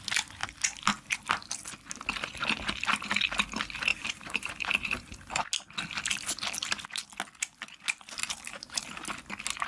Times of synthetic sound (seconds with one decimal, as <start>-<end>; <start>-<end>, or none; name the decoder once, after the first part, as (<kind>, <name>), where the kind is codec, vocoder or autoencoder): 3.9-5.4 (vocoder, BigVGAN v2)